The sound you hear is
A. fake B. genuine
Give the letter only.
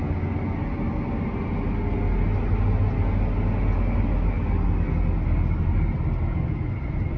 B